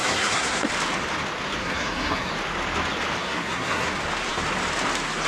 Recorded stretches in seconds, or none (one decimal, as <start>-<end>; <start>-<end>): 0.7-1.6; 2.3-3.2; 3.9-5.3